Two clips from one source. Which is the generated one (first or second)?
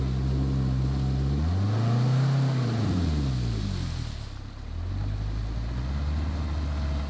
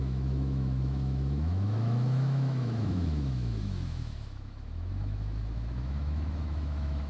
second